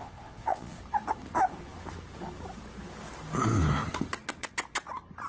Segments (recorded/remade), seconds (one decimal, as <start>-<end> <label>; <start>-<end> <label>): 0.0-0.8 remade; 0.8-5.3 recorded